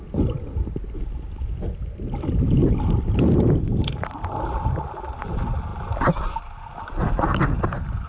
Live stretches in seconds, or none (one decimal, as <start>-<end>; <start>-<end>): 0.0-8.1